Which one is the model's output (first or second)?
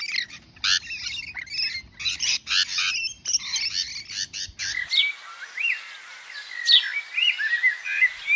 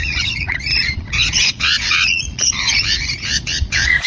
second